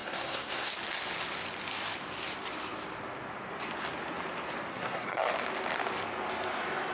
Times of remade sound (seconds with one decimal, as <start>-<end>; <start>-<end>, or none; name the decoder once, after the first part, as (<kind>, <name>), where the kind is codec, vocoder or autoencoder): 0.0-0.7 (codec, SNAC); 4.7-5.2